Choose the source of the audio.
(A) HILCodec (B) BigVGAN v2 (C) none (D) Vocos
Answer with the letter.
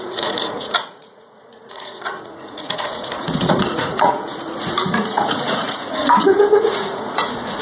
D